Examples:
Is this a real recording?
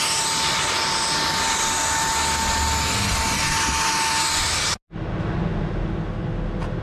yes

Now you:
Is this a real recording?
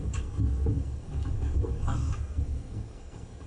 no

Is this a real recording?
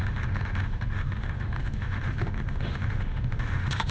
no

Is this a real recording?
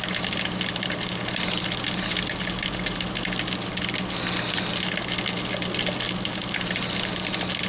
yes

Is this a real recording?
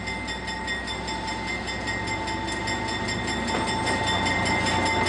yes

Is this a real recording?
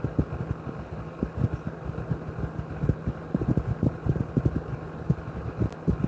yes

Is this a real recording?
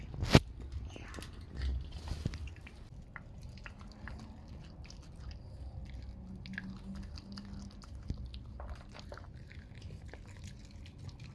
yes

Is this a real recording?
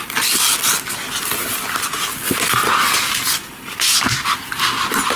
yes